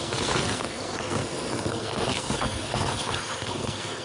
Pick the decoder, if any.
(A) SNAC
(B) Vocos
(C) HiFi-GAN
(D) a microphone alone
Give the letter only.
A